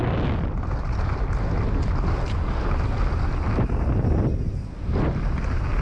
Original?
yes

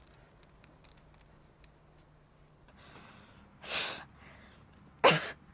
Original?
yes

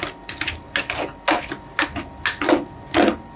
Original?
yes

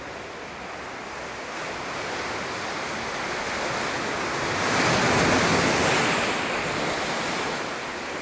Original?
yes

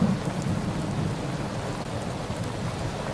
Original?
yes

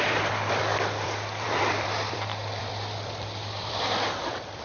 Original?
no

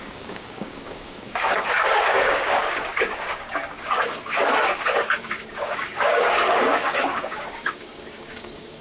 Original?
no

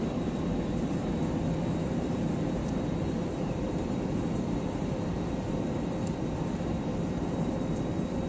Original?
yes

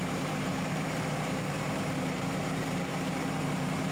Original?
no